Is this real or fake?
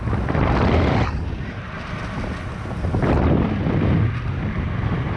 real